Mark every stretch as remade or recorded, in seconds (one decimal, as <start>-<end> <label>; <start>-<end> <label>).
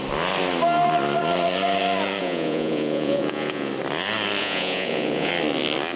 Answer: 0.0-2.2 recorded; 2.2-3.7 remade; 3.7-4.4 recorded; 4.4-5.3 remade; 5.3-6.0 recorded